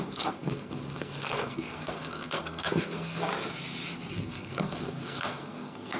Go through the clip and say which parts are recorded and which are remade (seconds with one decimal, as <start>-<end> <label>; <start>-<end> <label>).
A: 0.0-3.3 remade; 3.3-4.1 recorded; 4.1-6.0 remade